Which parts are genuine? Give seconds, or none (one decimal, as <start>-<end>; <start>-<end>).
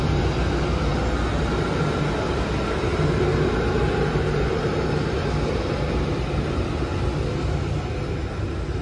0.0-8.8